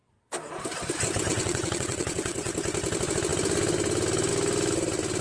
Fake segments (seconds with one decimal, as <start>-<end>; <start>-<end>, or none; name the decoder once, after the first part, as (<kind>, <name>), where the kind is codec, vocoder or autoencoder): 1.3-2.5 (vocoder, WaveNeXt)